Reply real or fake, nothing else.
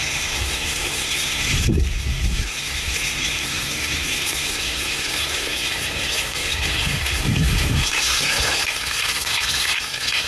fake